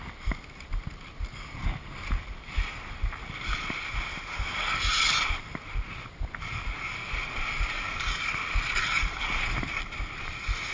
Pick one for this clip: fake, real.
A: real